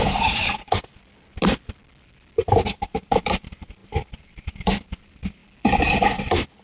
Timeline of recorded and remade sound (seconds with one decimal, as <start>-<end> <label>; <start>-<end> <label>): 0.0-0.4 remade; 0.4-2.5 recorded; 2.5-5.4 remade; 5.4-6.6 recorded